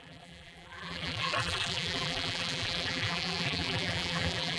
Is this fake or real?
fake